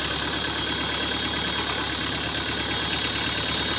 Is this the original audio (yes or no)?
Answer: yes